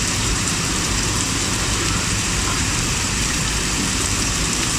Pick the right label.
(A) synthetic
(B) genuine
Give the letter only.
A